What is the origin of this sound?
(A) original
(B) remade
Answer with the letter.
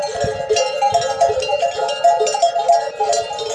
A